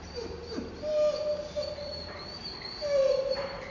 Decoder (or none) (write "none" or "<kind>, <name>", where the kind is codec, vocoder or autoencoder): vocoder, BigVGAN v2